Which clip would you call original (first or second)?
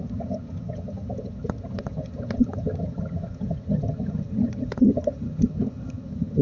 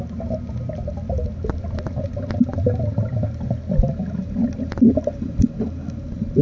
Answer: second